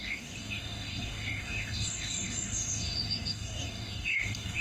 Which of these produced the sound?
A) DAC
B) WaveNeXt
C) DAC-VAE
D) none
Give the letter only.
A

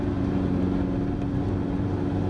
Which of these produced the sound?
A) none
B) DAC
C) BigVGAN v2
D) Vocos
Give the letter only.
A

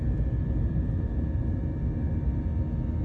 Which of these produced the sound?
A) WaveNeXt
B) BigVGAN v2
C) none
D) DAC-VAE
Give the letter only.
C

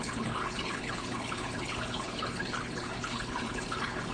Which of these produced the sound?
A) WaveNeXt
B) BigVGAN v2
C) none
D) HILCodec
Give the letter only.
D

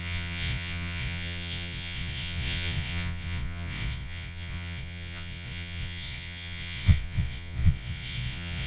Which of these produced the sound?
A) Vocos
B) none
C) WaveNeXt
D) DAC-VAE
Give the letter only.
A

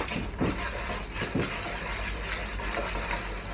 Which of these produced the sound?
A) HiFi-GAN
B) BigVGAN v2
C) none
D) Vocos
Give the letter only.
C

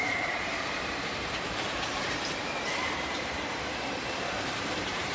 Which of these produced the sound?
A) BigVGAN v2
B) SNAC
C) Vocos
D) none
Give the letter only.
A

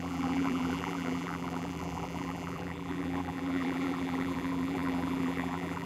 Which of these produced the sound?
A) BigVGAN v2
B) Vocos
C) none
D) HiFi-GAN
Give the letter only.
A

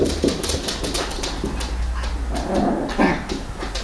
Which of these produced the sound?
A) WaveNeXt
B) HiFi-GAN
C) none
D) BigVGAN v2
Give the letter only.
C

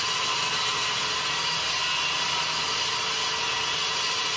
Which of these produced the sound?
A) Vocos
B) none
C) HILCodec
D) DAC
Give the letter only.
B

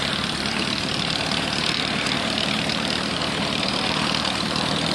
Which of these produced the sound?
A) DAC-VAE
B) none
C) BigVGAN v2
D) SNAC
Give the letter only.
C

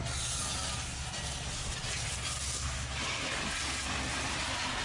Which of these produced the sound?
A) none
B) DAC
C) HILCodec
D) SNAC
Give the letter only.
A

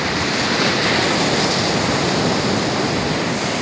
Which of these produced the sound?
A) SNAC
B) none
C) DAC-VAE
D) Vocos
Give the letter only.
B